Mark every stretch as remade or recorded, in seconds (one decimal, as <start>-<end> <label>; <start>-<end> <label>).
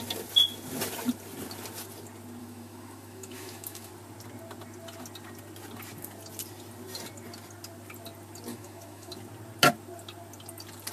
0.0-2.4 recorded; 2.4-3.9 remade; 3.9-8.5 recorded; 8.5-9.1 remade; 9.1-10.9 recorded